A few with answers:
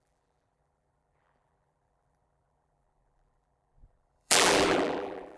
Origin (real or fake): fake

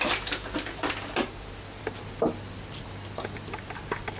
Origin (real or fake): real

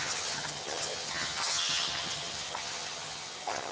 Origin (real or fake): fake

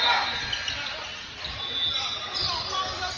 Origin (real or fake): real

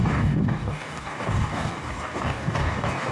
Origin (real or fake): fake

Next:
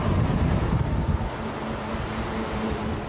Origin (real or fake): real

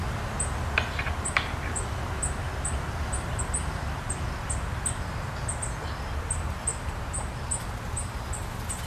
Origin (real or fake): real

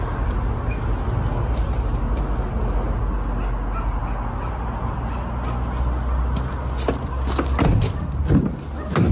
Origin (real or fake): real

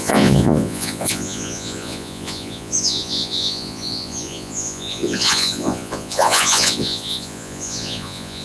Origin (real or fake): fake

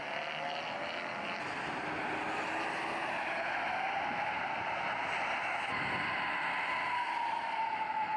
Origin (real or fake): real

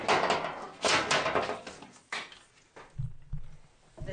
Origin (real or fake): real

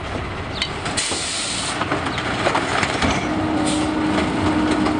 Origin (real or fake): real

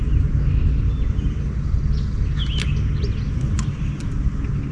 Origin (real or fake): real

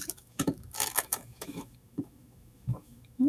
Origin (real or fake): fake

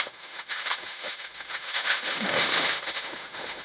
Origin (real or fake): fake